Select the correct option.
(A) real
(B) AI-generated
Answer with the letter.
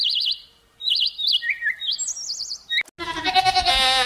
A